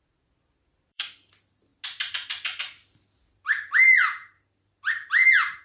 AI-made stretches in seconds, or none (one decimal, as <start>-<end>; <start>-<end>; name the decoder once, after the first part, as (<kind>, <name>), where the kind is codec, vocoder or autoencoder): 0.0-1.7 (vocoder, BigVGAN v2); 3.3-5.6

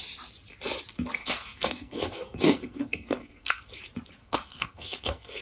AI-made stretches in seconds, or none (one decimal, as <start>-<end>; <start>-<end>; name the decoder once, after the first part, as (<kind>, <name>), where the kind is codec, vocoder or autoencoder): 1.2-3.8 (codec, SNAC); 4.2-5.4